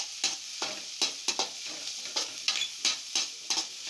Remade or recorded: recorded